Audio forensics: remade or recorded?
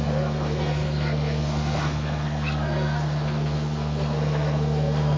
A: remade